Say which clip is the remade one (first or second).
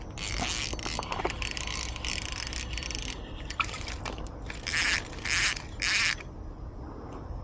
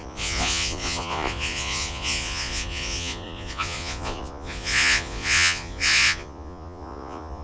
second